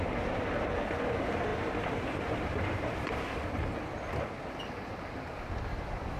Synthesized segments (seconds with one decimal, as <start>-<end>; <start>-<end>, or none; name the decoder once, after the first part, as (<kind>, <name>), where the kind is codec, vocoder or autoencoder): none